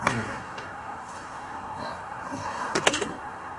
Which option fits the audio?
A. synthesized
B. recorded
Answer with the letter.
A